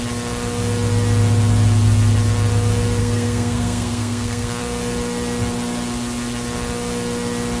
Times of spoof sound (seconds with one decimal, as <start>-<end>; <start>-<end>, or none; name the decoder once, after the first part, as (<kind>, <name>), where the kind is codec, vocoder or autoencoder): 3.0-4.6 (codec, SNAC)